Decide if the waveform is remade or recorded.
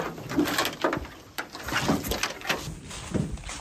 recorded